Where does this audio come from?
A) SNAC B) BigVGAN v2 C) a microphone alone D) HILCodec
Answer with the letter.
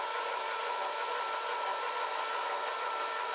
B